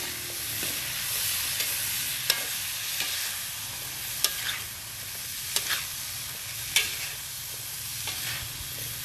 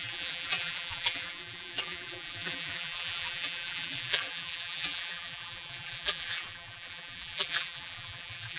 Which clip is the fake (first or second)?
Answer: second